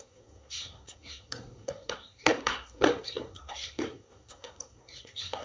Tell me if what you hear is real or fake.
fake